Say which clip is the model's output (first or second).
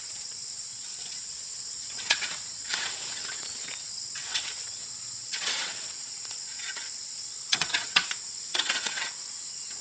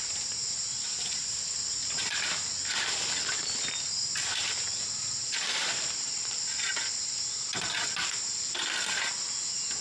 first